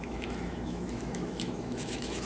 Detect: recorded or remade remade